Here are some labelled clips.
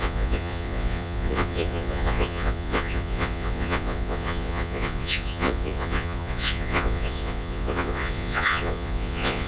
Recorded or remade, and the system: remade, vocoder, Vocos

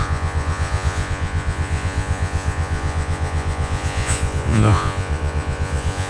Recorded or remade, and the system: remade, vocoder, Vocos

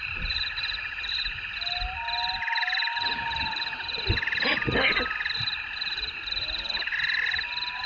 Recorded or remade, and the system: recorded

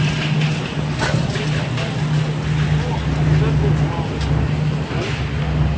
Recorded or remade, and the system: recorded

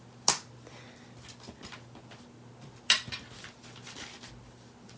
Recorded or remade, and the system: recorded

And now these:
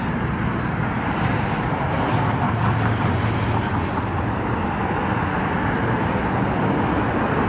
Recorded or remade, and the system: recorded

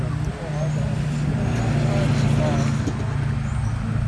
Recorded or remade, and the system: recorded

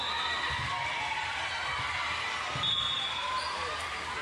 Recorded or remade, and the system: recorded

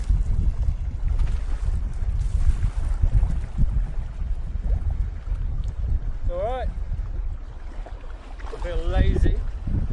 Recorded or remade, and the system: recorded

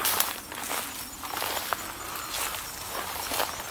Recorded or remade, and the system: recorded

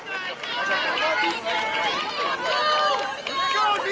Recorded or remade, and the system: recorded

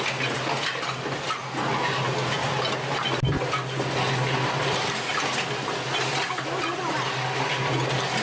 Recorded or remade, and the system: recorded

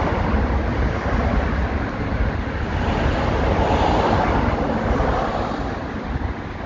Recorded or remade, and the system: recorded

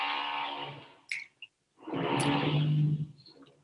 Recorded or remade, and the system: recorded